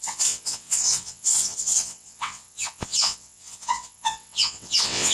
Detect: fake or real fake